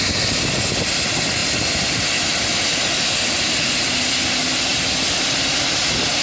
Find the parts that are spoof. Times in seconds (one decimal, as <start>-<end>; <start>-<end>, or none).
none